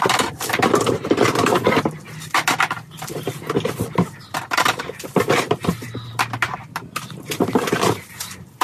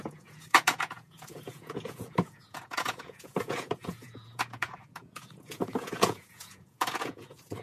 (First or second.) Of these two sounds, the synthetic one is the second